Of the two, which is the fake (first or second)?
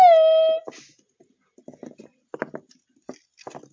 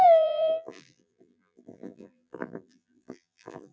second